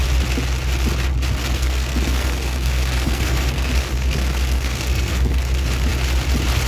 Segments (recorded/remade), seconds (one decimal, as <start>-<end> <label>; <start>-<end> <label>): 0.0-1.4 recorded; 1.4-5.4 remade; 5.4-6.7 recorded